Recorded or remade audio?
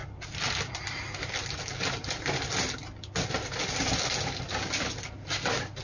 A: recorded